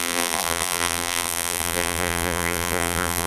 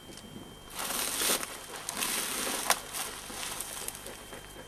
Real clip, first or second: second